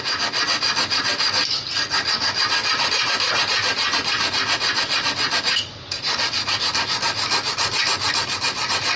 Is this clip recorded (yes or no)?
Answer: yes